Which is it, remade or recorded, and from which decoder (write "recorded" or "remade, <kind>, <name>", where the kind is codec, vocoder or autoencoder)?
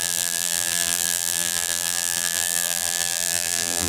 remade, vocoder, BigVGAN v2